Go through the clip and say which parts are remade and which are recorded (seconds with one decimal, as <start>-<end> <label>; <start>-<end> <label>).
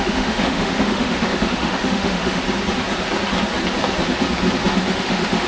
0.0-2.4 remade; 2.4-4.9 recorded; 4.9-5.5 remade